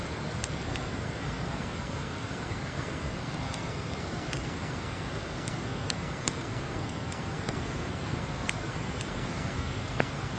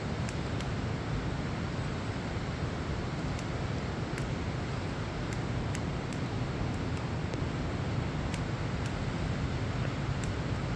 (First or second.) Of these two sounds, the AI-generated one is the first